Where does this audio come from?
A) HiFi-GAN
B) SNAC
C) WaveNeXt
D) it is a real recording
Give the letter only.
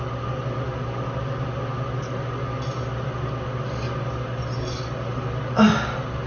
D